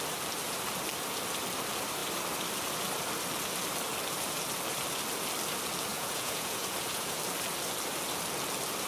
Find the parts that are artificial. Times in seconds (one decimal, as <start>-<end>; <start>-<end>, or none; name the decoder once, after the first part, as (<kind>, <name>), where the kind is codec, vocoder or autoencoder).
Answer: 5.9-7.2 (vocoder, Vocos)